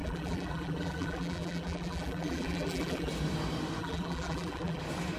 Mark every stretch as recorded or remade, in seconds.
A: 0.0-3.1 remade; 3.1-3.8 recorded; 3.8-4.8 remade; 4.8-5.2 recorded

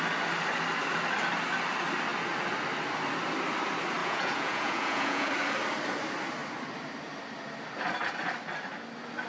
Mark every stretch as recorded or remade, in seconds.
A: 0.0-4.0 recorded; 4.0-5.3 remade; 5.3-9.3 recorded

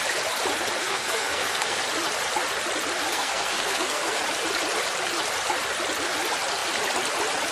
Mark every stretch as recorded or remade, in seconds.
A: 0.0-0.8 recorded; 0.8-1.8 remade; 1.8-3.1 recorded; 3.1-4.2 remade; 4.2-7.5 recorded

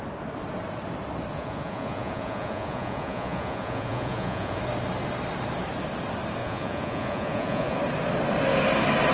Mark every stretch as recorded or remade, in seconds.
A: 0.0-1.3 recorded; 1.3-4.6 remade; 4.6-6.4 recorded; 6.4-7.8 remade; 7.8-9.1 recorded

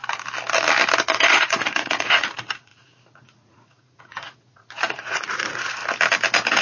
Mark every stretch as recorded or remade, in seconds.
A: 0.0-1.1 recorded; 1.1-5.8 remade; 5.8-6.6 recorded

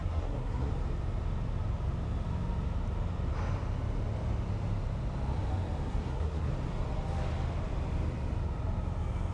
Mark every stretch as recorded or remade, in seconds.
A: 0.0-0.7 remade; 0.7-5.9 recorded; 5.9-6.5 remade; 6.5-9.3 recorded